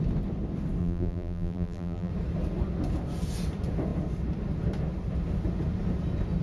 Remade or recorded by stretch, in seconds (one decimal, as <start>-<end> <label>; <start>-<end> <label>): 0.0-0.8 recorded; 0.8-2.1 remade; 2.1-6.4 recorded